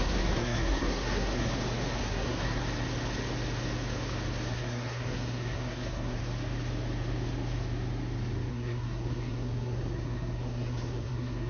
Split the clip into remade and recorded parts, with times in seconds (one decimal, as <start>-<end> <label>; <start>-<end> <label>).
0.0-1.5 remade; 1.5-2.0 recorded; 2.0-2.6 remade; 2.6-4.5 recorded; 4.5-6.2 remade; 6.2-8.5 recorded; 8.5-11.5 remade